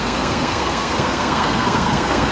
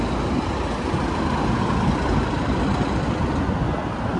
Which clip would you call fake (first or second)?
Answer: first